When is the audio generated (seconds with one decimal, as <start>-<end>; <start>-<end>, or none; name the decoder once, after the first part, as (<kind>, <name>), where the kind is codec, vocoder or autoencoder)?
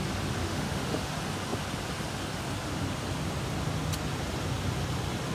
0.4-1.1 (autoencoder, DAC-VAE)